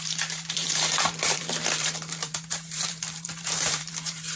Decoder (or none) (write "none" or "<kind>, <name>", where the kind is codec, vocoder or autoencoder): vocoder, BigVGAN v2